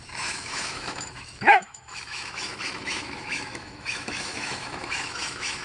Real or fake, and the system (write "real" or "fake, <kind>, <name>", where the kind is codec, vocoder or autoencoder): fake, autoencoder, DAC-VAE